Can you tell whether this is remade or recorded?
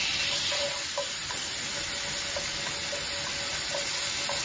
recorded